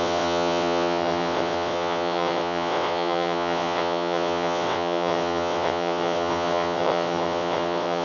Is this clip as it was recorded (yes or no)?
no